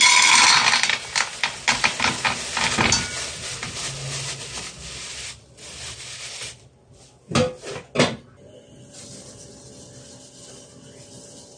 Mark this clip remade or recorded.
recorded